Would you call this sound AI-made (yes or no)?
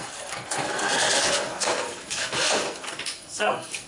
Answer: yes